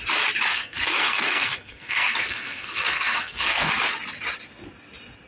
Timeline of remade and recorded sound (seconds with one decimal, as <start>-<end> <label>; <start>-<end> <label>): 0.0-0.5 recorded; 0.5-3.7 remade; 3.7-5.3 recorded